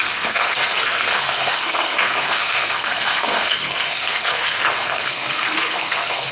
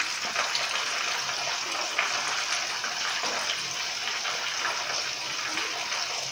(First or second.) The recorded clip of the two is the second